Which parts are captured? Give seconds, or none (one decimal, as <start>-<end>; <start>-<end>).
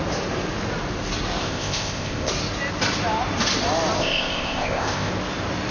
0.0-1.4; 2.3-4.0; 5.1-5.7